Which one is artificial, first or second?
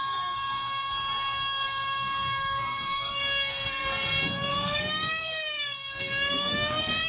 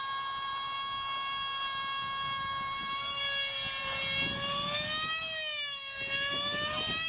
first